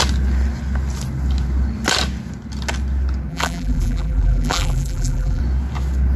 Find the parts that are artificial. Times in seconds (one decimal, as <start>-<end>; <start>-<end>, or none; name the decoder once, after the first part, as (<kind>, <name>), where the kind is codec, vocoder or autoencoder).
3.3-5.4 (vocoder, BigVGAN v2)